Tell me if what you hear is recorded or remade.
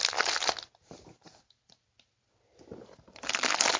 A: recorded